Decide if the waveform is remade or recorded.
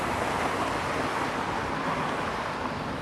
recorded